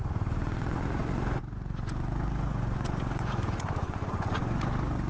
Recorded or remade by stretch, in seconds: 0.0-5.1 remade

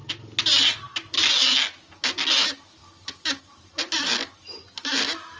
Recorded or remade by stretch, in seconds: 0.0-5.4 recorded

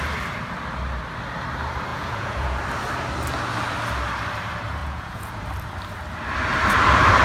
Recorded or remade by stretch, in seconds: 0.0-1.9 recorded; 1.9-2.6 remade; 2.6-4.8 recorded; 4.8-5.3 remade; 5.3-7.2 recorded

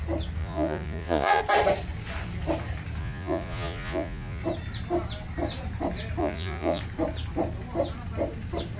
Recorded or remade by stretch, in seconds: 0.0-0.4 recorded; 0.4-1.4 remade; 1.4-3.0 recorded; 3.0-4.4 remade; 4.4-6.2 recorded; 6.2-6.8 remade; 6.8-8.8 recorded

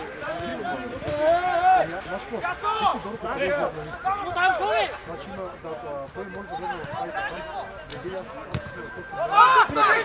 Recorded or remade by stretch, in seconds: 0.0-7.9 recorded; 7.9-8.9 remade; 8.9-10.0 recorded

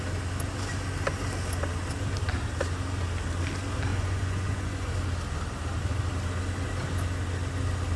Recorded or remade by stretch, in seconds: 0.0-3.9 recorded; 3.9-4.9 remade; 4.9-8.0 recorded

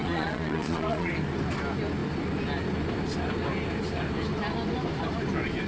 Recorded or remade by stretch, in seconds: 0.0-1.1 remade; 1.1-5.7 recorded